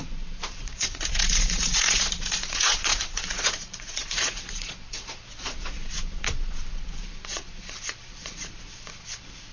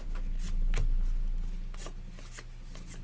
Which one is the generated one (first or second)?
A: first